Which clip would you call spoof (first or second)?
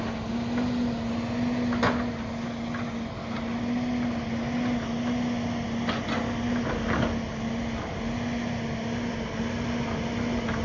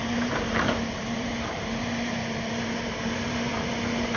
second